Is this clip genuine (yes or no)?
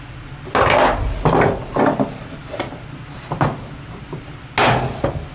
yes